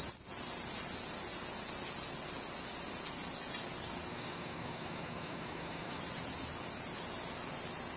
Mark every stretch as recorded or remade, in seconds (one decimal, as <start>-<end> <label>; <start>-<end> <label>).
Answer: 0.0-4.1 recorded; 4.1-6.0 remade; 6.0-8.0 recorded